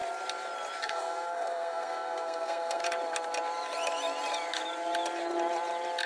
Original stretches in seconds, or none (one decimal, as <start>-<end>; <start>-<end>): 0.0-0.8; 2.8-6.1